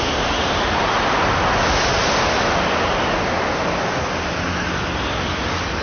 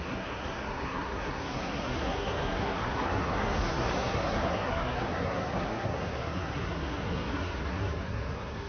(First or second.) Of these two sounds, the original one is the first